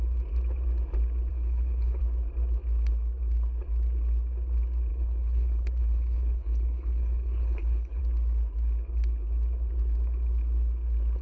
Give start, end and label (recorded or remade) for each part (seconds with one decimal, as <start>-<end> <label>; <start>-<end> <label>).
0.0-1.3 recorded; 1.3-2.0 remade; 2.0-4.9 recorded; 4.9-8.0 remade; 8.0-11.2 recorded